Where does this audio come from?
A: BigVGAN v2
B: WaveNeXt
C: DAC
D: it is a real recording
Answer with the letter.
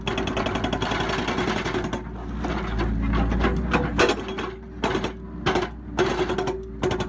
D